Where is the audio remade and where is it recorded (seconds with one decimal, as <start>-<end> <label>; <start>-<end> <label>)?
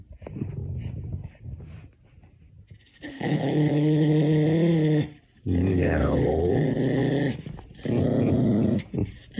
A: 0.0-2.9 recorded; 2.9-4.1 remade; 4.1-5.7 recorded; 5.7-6.5 remade; 6.5-9.4 recorded